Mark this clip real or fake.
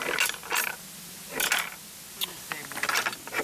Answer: real